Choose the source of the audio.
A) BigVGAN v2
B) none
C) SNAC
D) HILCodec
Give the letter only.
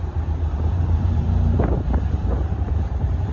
A